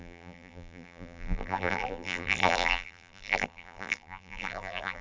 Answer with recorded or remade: remade